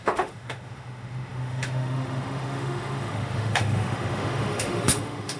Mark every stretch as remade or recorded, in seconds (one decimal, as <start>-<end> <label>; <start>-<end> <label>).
0.0-5.4 remade